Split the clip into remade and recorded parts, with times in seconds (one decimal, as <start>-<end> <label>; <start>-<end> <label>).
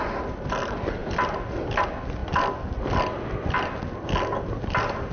0.0-5.1 recorded